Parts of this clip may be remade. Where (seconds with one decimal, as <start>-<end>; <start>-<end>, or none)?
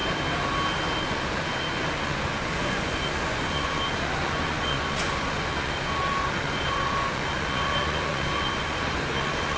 1.0-9.6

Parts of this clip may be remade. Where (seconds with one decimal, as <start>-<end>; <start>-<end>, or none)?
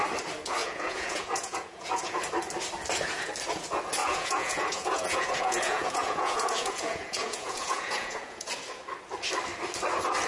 0.6-2.2; 4.0-8.5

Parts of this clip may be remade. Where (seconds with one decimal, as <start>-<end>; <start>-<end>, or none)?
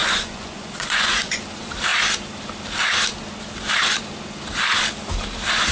0.0-1.4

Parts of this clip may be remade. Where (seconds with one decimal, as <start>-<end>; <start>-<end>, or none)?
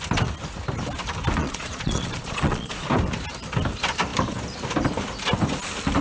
1.4-2.9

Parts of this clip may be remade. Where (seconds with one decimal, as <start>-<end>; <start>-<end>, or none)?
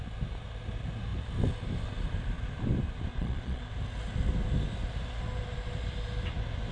3.1-3.6